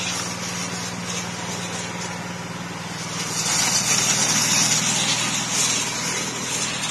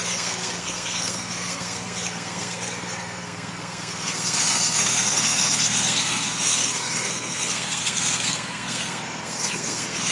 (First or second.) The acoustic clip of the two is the first